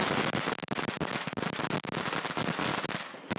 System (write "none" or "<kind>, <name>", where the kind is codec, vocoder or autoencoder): none